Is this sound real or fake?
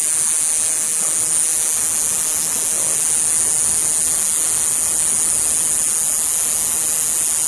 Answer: real